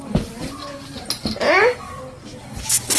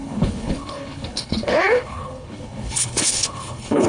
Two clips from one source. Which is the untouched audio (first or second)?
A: first